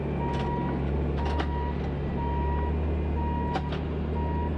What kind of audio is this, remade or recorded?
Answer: recorded